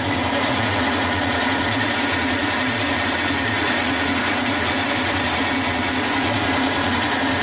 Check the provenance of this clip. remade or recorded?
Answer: remade